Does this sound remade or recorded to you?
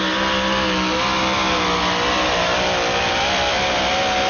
recorded